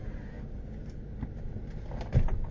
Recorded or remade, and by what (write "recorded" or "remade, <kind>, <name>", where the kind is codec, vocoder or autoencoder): recorded